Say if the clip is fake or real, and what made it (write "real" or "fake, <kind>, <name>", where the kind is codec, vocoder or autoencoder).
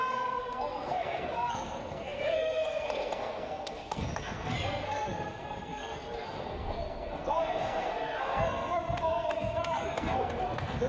fake, codec, SNAC